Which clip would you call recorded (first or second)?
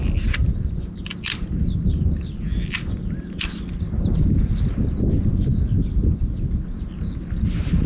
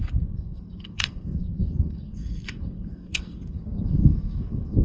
first